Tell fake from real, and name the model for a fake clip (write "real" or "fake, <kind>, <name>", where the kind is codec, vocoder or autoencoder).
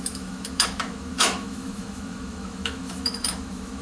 fake, autoencoder, DAC-VAE